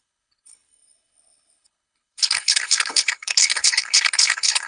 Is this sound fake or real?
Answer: fake